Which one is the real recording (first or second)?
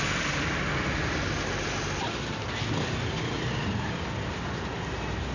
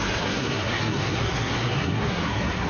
first